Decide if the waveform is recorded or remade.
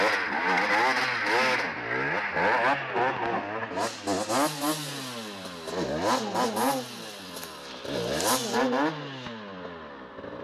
recorded